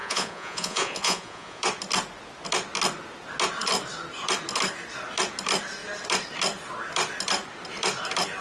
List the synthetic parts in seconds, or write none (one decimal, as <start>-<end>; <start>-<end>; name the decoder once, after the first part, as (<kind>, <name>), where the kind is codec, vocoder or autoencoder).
0.0-1.6 (vocoder, Vocos)